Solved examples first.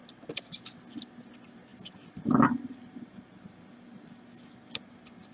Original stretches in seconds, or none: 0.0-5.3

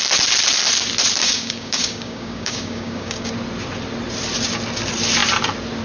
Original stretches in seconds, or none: 0.0-1.2; 3.3-5.8